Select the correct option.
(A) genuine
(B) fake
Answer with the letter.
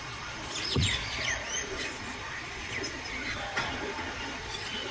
B